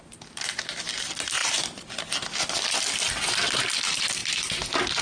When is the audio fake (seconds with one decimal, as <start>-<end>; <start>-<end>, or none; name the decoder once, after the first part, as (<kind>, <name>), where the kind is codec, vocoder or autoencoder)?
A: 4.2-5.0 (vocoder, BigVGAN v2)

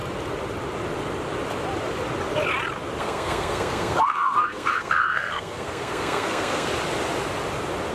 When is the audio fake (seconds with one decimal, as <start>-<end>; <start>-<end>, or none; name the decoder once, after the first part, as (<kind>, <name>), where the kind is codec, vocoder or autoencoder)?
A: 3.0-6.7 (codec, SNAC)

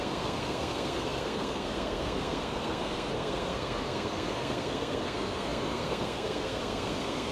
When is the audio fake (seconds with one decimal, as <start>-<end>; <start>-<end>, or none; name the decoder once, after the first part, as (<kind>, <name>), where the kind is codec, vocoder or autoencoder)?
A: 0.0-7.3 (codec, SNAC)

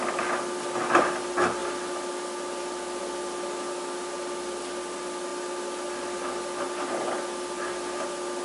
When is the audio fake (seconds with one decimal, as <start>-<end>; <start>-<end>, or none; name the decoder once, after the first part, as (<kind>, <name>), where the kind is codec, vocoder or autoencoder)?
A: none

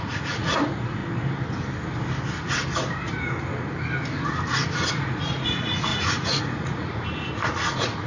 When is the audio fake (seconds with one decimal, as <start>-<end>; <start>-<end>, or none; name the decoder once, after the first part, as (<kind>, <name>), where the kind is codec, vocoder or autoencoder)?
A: 0.0-1.0 (vocoder, Vocos); 4.9-8.1

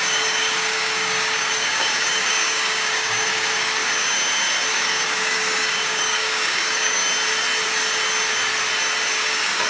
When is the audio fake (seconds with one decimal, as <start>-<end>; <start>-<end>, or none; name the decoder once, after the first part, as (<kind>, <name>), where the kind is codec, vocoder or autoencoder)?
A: 0.0-3.8 (codec, DAC); 4.7-7.0; 9.1-9.7